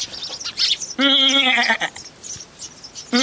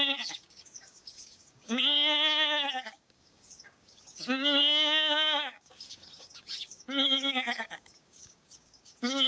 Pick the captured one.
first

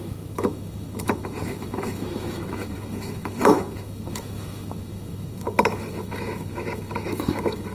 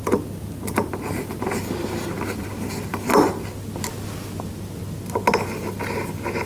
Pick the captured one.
second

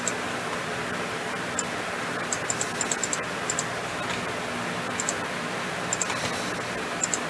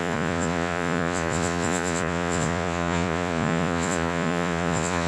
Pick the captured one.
first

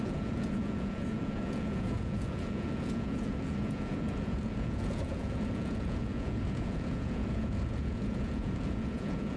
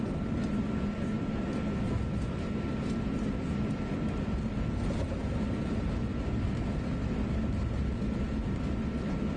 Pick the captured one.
second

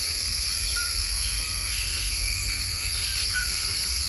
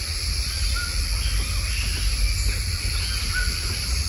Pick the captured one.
second